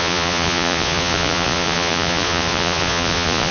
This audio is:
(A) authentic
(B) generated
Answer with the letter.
B